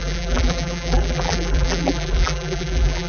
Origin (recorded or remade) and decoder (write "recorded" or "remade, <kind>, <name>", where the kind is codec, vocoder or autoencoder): remade, vocoder, BigVGAN v2